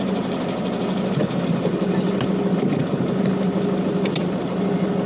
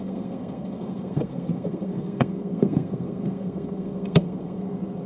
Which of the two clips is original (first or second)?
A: first